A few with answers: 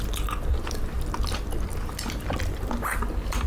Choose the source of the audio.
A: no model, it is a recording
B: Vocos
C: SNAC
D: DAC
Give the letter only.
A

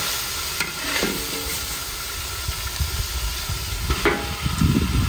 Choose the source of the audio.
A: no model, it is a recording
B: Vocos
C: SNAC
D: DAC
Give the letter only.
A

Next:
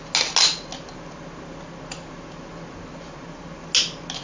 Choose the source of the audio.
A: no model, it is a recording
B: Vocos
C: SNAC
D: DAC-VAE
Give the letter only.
A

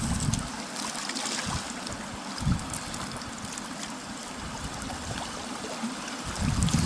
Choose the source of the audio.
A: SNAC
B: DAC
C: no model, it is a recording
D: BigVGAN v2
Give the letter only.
C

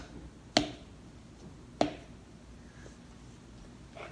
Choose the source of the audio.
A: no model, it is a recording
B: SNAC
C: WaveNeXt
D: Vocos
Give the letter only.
A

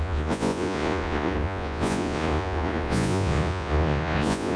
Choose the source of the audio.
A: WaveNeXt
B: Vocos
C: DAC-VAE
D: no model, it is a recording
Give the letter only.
B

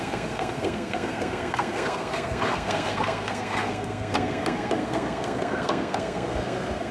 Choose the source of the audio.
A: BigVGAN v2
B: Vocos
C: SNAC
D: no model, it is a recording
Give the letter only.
C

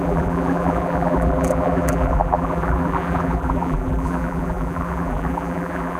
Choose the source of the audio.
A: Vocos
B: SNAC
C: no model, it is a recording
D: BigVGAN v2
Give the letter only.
D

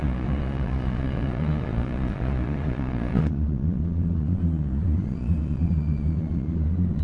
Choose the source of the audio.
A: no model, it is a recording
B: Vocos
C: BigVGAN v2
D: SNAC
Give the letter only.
B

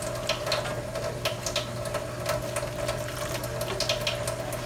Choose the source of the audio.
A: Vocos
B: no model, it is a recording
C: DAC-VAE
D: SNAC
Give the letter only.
B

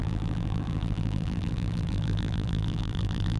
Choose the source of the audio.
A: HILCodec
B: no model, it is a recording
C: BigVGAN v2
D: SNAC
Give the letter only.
C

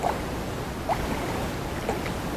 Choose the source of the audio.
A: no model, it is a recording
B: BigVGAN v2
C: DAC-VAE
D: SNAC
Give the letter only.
A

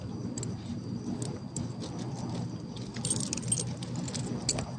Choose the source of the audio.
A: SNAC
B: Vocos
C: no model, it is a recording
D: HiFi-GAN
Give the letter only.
C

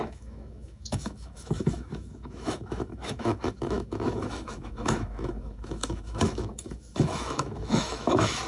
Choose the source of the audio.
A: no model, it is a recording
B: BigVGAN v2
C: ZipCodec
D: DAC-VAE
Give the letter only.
D